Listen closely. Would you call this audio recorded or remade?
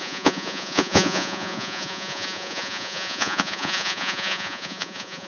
remade